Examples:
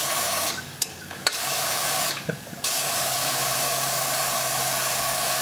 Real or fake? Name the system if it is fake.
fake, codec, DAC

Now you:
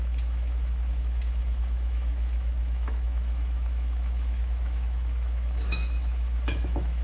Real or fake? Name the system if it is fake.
fake, autoencoder, DAC-VAE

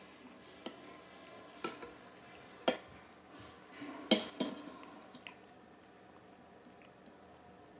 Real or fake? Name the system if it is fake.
real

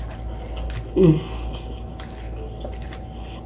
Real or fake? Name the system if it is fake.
real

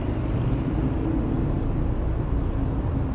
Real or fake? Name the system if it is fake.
real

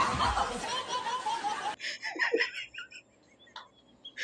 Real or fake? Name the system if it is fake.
real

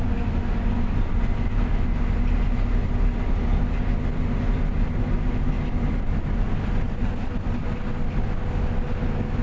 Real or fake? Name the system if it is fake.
real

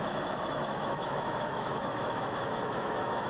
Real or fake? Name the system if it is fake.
fake, autoencoder, DAC-VAE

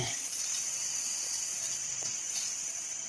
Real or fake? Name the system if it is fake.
fake, vocoder, WaveNeXt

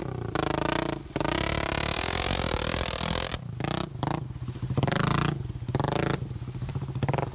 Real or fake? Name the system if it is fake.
real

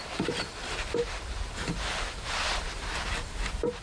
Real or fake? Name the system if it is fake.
fake, vocoder, BigVGAN v2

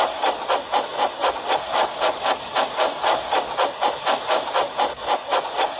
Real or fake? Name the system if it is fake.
real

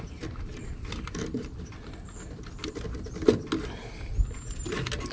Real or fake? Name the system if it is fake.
real